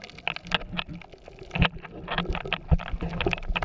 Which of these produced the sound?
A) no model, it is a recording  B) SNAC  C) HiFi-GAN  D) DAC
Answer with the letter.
A